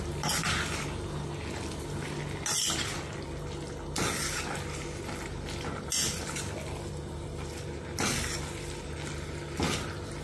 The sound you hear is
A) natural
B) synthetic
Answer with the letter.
A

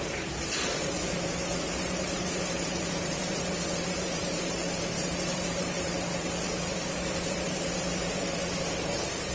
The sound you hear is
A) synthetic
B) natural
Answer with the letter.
A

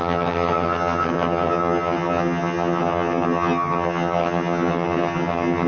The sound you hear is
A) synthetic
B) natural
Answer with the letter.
A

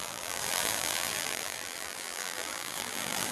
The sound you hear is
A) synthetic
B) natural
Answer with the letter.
A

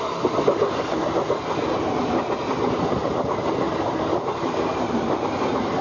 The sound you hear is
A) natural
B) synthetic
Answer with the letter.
A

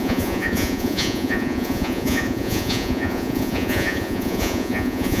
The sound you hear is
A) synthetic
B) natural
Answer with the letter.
A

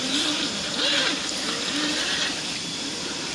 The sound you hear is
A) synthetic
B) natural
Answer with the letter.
B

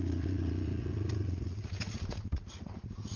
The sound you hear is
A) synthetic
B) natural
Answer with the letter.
A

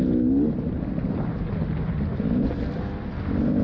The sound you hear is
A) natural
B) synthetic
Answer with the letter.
A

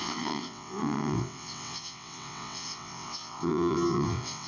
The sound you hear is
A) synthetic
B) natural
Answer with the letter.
A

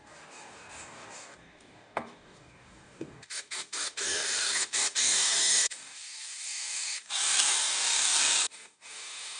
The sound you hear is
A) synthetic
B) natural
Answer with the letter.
A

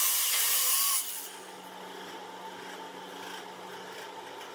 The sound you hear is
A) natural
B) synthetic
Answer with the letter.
A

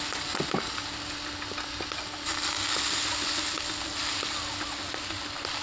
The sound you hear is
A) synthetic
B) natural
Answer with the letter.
B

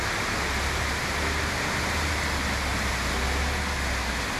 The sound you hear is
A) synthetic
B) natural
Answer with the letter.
B